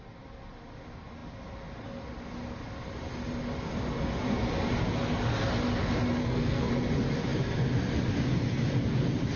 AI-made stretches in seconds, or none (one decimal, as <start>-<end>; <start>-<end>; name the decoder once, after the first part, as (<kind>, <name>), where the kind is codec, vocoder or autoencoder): 6.2-6.7 (codec, SNAC)